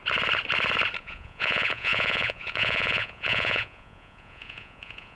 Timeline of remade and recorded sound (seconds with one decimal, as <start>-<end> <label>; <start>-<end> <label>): 0.0-1.0 recorded; 1.0-5.2 remade